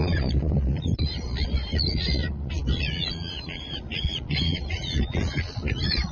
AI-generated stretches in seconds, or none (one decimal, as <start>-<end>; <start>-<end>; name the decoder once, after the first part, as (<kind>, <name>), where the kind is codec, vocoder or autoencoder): 0.0-6.1 (vocoder, Vocos)